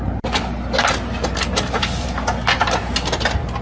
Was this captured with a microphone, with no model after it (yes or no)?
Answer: yes